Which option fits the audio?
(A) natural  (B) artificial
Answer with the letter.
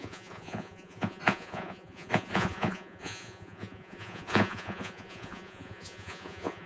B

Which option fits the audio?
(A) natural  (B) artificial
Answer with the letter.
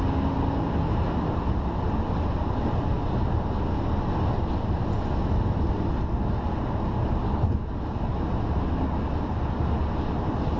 A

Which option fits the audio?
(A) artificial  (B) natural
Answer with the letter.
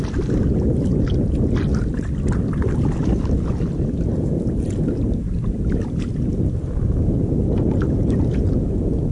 B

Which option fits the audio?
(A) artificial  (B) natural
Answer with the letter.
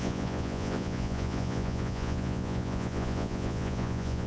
A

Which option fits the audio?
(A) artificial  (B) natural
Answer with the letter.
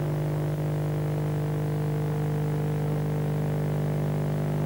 B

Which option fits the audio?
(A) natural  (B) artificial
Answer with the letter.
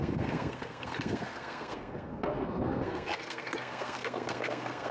B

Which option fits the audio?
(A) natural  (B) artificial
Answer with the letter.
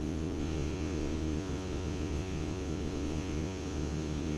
B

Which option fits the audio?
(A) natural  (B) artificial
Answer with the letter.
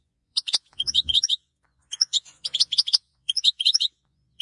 B